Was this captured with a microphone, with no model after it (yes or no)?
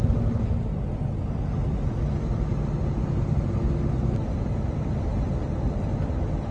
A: yes